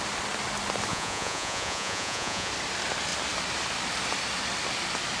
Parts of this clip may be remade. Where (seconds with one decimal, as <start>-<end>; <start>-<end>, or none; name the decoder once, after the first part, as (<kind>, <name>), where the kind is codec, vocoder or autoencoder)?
0.9-2.5 (vocoder, Vocos)